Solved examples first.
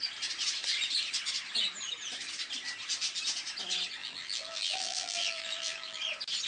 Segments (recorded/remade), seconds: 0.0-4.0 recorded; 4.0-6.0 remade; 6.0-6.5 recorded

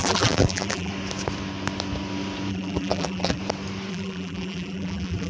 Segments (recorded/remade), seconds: 0.0-0.9 remade; 0.9-2.5 recorded; 2.5-3.4 remade; 3.4-3.9 recorded; 3.9-5.3 remade

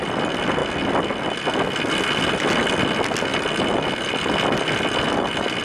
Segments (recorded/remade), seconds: 0.0-5.6 recorded

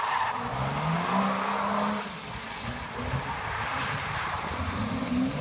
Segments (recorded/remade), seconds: 0.0-0.5 remade; 0.5-3.7 recorded; 3.7-5.4 remade

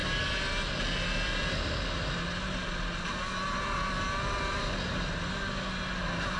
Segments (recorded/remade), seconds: 0.0-6.4 recorded

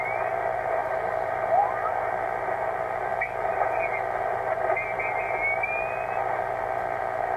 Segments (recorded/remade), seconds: 0.0-0.8 recorded; 0.8-2.1 remade; 2.1-7.4 recorded

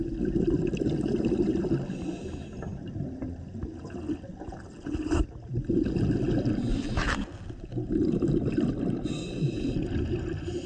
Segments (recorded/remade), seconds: 0.0-6.7 recorded; 6.7-8.7 remade; 8.7-10.7 recorded